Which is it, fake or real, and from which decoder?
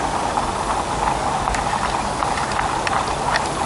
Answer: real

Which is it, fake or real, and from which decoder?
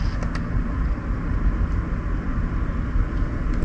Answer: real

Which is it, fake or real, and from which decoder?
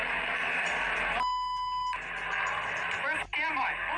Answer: real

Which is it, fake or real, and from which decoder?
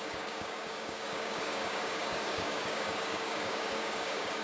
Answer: fake, codec, DAC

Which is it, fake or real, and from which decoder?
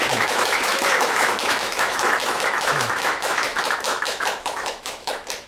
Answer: fake, autoencoder, DAC-VAE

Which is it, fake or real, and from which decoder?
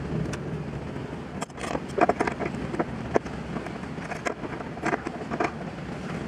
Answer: real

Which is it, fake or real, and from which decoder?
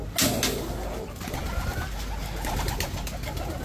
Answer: real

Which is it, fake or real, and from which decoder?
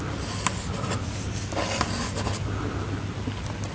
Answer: real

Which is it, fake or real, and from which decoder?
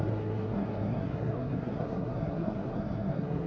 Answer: fake, codec, SNAC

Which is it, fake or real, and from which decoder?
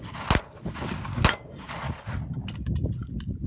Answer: real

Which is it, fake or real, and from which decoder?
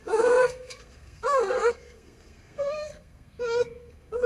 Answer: fake, codec, SNAC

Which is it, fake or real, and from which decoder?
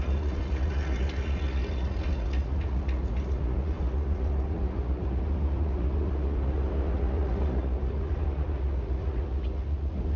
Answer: fake, vocoder, Vocos